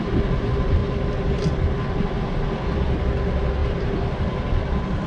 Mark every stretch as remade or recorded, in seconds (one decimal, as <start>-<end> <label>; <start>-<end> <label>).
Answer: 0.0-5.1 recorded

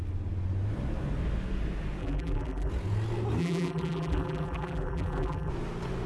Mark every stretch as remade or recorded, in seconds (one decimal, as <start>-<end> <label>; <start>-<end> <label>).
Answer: 0.0-2.0 recorded; 2.0-2.7 remade; 2.7-3.4 recorded; 3.4-5.5 remade; 5.5-6.1 recorded

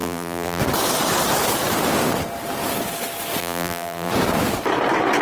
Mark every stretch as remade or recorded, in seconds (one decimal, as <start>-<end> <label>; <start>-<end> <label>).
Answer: 0.0-0.6 remade; 0.6-3.4 recorded; 3.4-4.1 remade; 4.1-5.2 recorded

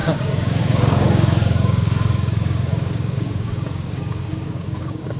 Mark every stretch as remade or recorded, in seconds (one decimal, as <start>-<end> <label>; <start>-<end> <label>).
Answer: 0.0-5.2 remade

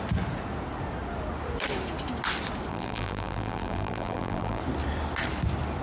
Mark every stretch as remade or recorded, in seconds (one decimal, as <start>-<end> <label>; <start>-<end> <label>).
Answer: 0.0-2.7 recorded; 2.7-4.6 remade; 4.6-5.8 recorded

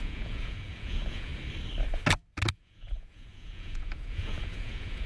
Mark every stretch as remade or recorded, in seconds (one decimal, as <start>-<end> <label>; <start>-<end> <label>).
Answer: 0.0-1.3 remade; 1.3-2.5 recorded; 2.5-5.1 remade